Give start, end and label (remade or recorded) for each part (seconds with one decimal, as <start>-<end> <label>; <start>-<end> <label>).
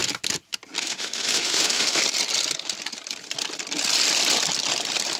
0.0-0.8 recorded; 0.8-2.0 remade; 2.0-5.2 recorded